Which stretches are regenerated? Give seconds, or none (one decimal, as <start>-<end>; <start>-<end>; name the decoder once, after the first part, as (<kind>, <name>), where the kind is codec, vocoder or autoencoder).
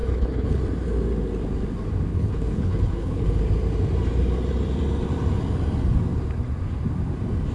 0.0-0.6 (codec, HILCodec); 2.1-3.4